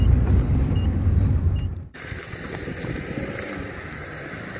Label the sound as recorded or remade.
remade